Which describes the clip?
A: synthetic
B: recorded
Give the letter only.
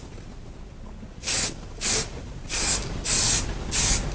B